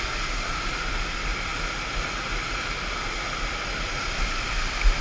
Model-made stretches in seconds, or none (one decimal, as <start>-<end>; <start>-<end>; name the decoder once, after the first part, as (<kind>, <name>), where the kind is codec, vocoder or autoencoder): none